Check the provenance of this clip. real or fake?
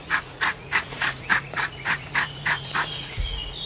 fake